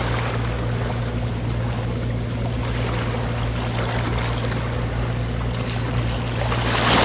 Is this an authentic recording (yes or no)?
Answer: yes